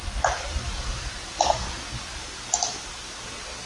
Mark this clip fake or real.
real